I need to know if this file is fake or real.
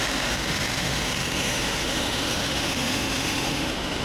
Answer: fake